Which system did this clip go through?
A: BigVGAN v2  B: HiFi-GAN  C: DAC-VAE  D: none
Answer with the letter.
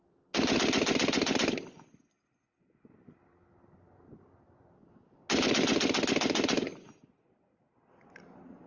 D